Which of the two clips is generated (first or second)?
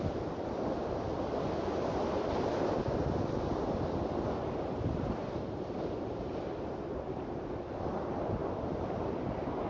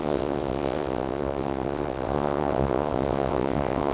second